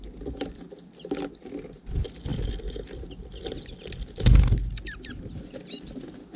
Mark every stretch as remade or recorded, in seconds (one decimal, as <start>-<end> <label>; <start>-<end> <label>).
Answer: 0.0-6.4 recorded